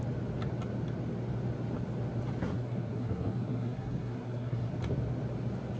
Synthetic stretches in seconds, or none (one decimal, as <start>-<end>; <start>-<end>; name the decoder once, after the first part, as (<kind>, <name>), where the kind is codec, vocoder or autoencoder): 2.4-4.7 (codec, SNAC)